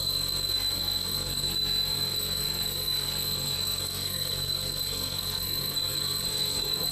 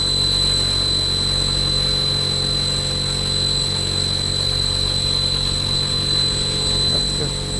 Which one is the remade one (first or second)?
first